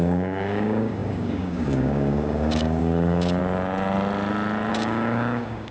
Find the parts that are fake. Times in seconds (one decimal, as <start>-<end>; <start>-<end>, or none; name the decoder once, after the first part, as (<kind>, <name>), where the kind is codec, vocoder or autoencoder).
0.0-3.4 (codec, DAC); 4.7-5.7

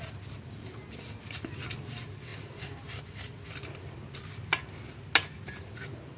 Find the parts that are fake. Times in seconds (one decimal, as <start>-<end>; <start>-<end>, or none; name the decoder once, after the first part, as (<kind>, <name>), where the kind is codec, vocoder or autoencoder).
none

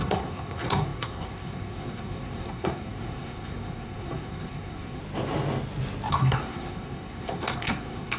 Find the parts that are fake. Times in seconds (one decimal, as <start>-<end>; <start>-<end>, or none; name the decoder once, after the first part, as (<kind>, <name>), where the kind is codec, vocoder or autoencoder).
0.0-5.0 (codec, SNAC); 6.1-8.2